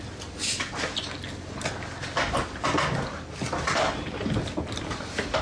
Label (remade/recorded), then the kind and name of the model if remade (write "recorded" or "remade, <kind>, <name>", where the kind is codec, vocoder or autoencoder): recorded